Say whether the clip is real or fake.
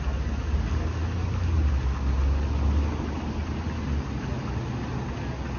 real